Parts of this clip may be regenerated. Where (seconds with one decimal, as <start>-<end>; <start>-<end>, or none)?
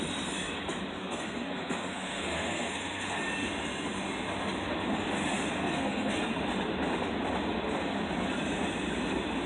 1.0-3.2; 5.6-6.1